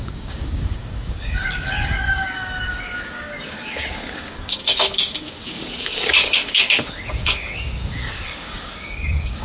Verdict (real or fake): fake